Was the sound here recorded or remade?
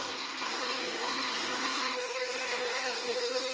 remade